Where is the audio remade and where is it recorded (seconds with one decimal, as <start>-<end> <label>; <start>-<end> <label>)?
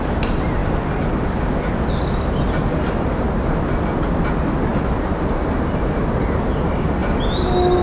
0.0-7.8 recorded